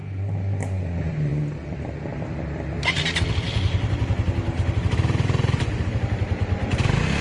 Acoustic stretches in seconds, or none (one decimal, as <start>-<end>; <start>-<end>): 0.0-7.2